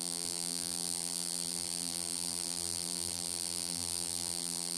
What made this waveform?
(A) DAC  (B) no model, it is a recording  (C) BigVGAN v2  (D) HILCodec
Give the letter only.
C